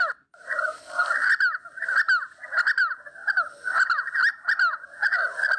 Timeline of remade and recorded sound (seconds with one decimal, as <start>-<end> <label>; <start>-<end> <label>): 0.0-5.6 recorded